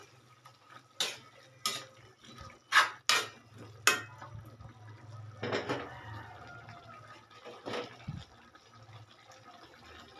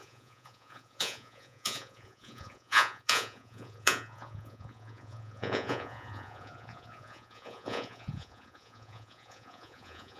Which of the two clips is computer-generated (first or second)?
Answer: second